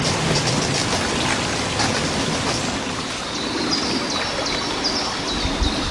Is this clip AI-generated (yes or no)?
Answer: no